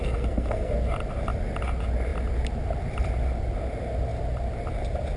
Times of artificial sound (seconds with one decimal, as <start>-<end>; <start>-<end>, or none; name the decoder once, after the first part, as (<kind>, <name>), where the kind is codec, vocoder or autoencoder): 0.0-0.7 (codec, SNAC)